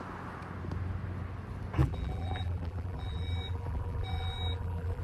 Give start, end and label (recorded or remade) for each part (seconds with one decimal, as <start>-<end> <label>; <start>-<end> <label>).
0.0-1.8 recorded; 1.8-5.0 remade